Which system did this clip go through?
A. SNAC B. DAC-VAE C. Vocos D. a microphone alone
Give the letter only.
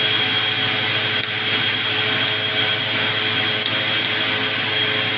D